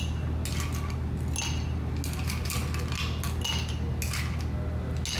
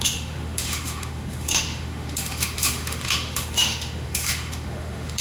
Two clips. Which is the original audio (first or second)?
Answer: first